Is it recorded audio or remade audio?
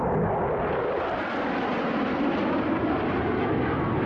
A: recorded